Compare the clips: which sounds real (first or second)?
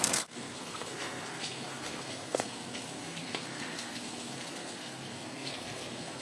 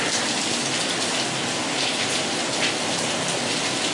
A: second